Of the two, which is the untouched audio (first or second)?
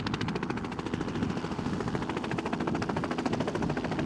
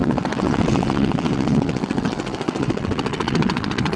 first